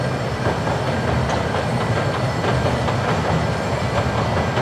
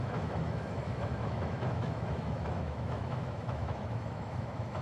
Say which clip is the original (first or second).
first